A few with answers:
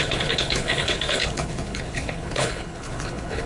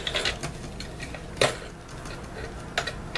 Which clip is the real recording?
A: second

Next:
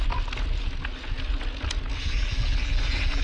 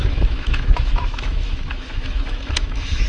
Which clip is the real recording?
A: first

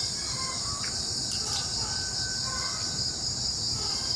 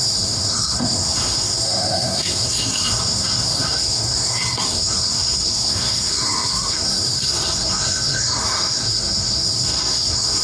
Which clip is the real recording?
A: first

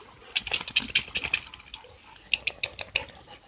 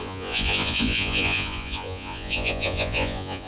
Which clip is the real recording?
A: first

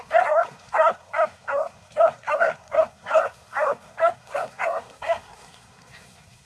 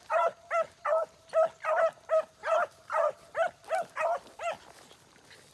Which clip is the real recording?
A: second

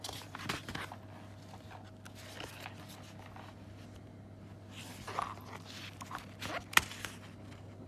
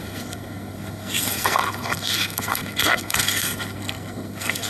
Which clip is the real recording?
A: first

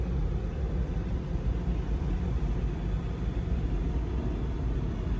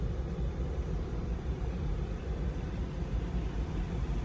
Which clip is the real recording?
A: first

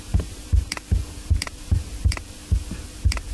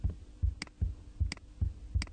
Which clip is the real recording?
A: second